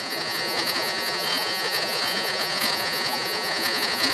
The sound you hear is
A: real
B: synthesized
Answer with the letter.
B